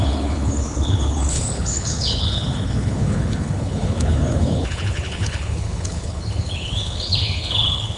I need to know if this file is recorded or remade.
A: remade